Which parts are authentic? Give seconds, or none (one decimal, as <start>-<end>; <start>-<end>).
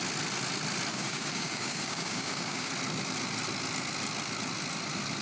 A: 0.0-0.9; 2.7-5.2